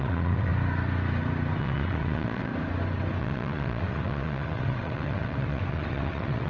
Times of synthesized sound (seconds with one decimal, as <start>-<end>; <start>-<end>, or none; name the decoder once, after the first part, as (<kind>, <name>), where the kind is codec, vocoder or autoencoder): 0.0-0.5 (vocoder, WaveNeXt); 1.6-2.5; 3.2-6.5